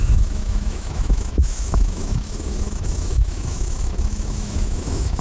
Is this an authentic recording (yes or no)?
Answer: no